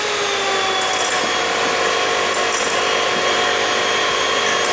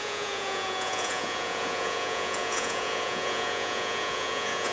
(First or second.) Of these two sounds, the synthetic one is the second